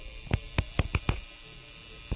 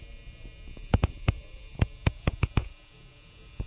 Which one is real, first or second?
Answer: first